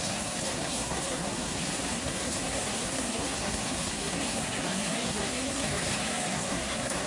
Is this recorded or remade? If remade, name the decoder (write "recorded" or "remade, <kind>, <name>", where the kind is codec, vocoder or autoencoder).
remade, codec, SNAC